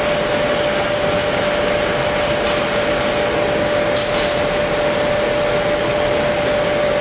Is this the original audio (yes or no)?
yes